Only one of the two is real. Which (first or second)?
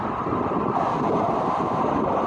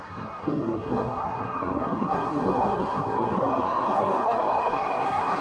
first